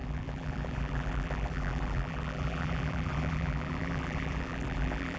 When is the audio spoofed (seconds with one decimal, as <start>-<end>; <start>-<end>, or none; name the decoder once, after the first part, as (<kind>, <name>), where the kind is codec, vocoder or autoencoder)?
0.0-5.2 (vocoder, BigVGAN v2)